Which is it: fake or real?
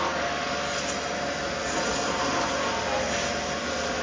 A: real